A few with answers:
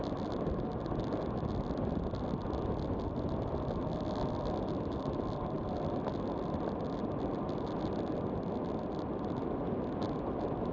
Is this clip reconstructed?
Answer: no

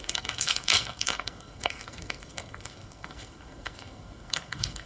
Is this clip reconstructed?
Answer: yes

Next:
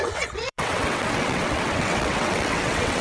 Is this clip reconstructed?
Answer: yes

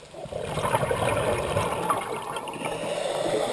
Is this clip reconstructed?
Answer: no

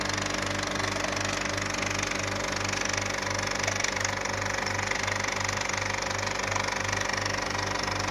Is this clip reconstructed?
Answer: no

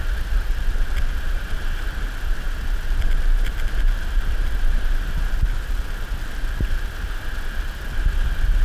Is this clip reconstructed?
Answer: no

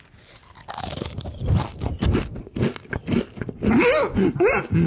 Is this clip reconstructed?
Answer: no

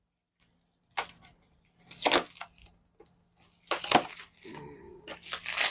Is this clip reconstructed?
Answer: no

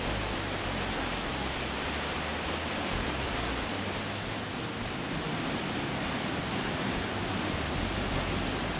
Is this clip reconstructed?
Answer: no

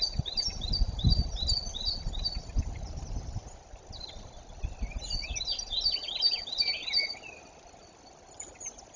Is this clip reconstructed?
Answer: no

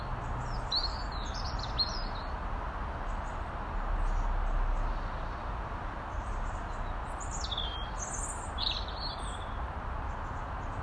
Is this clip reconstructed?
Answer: no